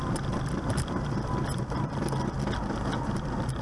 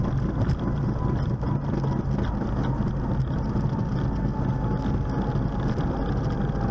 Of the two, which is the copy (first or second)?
first